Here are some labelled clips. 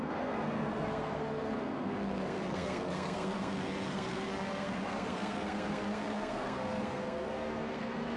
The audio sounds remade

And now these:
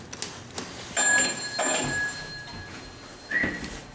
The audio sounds recorded